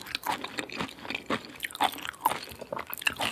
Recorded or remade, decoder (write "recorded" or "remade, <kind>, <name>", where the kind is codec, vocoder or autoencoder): recorded